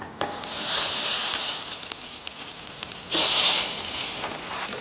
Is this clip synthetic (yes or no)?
no